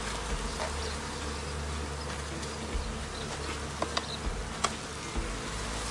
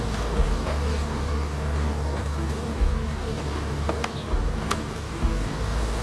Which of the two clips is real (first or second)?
first